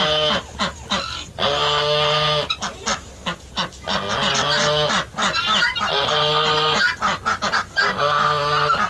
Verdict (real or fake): real